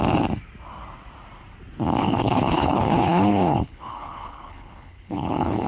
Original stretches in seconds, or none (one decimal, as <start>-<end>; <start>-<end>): 0.0-2.0